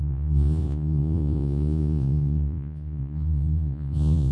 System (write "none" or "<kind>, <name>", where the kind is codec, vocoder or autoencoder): vocoder, Vocos